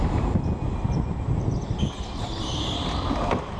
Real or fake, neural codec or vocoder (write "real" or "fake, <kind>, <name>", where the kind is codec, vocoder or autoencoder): real